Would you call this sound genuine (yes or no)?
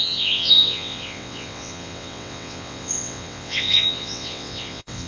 no